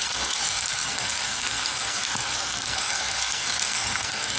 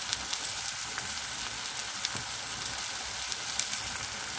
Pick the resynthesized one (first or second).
first